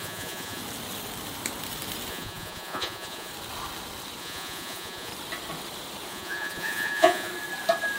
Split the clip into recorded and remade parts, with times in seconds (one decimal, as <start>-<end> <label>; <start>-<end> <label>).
0.0-0.6 remade; 0.6-2.1 recorded; 2.1-3.3 remade; 3.3-4.2 recorded; 4.2-5.1 remade; 5.1-6.1 recorded; 6.1-7.3 remade; 7.3-8.0 recorded

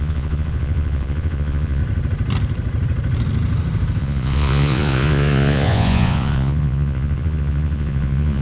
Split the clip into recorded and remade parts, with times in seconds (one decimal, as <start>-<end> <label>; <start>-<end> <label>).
0.0-1.8 remade; 1.8-4.0 recorded; 4.0-8.4 remade

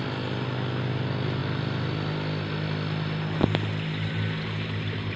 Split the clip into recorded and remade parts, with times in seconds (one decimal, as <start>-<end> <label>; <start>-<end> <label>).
0.0-5.2 recorded

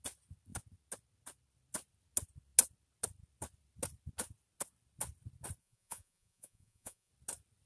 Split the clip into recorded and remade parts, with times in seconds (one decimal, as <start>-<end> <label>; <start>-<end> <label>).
0.0-5.6 recorded; 5.6-7.1 remade; 7.1-7.7 recorded

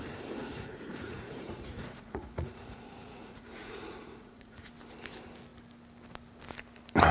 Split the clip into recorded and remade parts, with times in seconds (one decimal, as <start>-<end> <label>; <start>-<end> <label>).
0.0-0.4 recorded; 0.4-4.7 remade; 4.7-7.1 recorded

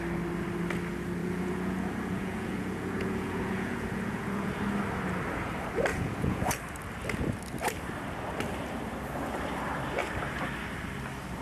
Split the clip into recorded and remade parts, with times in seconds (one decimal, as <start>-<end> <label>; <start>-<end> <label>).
0.0-1.2 recorded; 1.2-4.6 remade; 4.6-5.9 recorded; 5.9-6.5 remade; 6.5-11.4 recorded

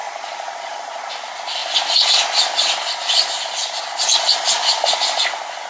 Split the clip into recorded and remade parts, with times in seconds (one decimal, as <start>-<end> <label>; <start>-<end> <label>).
0.0-1.1 remade; 1.1-5.7 recorded